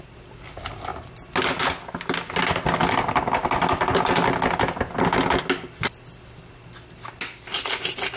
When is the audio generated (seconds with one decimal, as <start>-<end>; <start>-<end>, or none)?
none

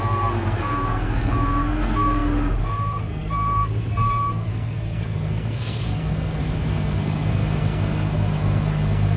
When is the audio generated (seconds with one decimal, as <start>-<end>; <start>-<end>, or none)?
0.0-9.2

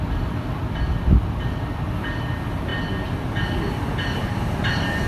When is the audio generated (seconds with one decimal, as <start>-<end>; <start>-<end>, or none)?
0.6-1.9; 4.2-5.1

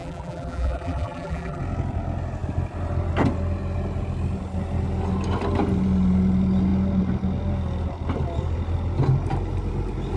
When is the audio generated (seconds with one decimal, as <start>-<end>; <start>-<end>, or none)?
0.0-1.6

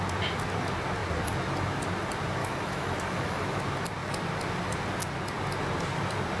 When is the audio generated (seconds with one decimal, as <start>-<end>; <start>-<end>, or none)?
2.4-3.6

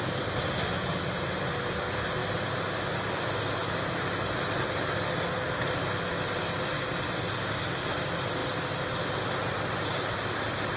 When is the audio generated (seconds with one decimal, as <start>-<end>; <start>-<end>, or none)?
none